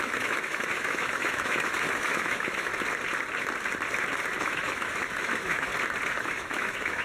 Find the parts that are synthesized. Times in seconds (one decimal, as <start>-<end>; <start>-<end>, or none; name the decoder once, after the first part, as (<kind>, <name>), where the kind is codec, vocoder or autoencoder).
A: 0.0-2.7 (autoencoder, DAC-VAE); 4.4-5.7; 6.2-7.0